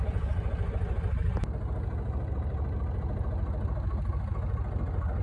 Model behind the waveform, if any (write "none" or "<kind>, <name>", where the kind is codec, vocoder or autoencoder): none